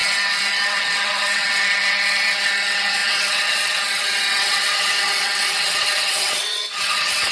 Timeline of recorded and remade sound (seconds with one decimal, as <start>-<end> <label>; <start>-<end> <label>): 0.0-7.3 remade